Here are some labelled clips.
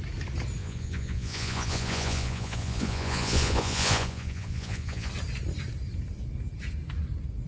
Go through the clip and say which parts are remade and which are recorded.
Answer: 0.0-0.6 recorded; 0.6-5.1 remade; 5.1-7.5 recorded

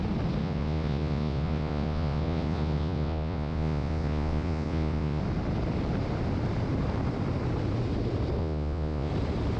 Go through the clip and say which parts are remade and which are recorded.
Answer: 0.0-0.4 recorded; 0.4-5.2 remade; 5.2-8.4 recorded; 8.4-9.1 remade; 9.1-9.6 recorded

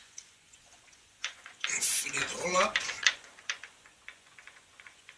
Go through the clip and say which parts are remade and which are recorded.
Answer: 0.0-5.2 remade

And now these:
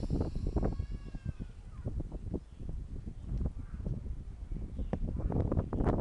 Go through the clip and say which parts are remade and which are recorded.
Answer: 0.0-6.0 recorded

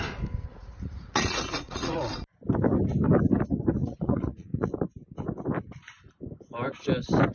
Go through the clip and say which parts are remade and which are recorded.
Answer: 0.0-0.5 recorded; 0.5-2.0 remade; 2.0-3.8 recorded; 3.8-4.7 remade; 4.7-7.3 recorded

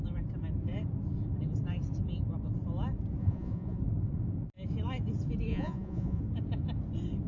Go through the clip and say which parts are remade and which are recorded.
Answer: 0.0-3.2 recorded; 3.2-3.8 remade; 3.8-5.5 recorded; 5.5-6.2 remade; 6.2-7.3 recorded

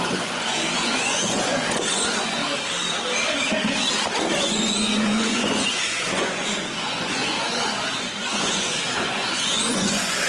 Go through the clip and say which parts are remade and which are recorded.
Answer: 0.0-2.4 remade; 2.4-4.3 recorded; 4.3-10.3 remade